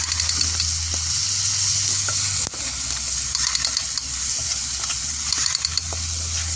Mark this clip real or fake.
real